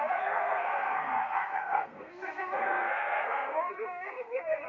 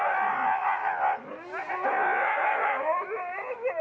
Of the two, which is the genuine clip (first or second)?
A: second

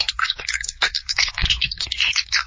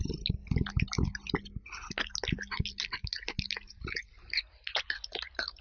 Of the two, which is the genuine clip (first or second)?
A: second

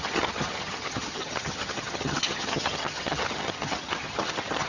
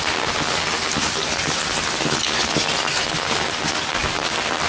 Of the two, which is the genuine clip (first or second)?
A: second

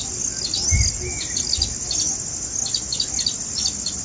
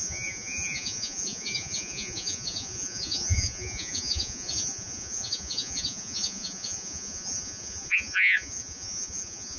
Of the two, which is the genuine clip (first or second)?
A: first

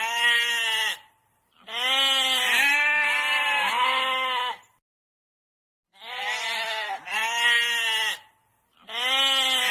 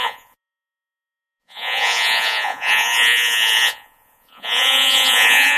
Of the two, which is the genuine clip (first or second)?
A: first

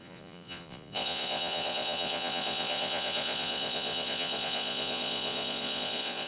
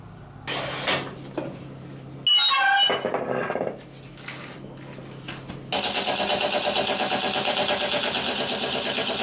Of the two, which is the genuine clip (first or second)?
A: second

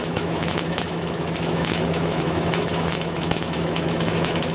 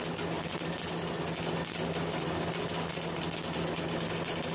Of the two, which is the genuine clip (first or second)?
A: second